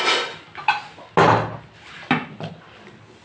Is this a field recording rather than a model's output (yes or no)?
yes